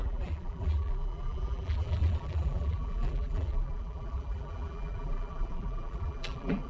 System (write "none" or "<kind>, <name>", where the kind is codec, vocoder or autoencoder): vocoder, BigVGAN v2